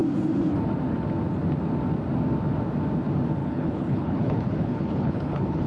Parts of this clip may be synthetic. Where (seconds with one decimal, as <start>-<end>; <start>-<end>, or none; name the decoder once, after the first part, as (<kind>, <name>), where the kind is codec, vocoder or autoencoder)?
3.4-5.7 (codec, HILCodec)